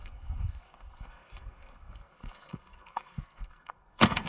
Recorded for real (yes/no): no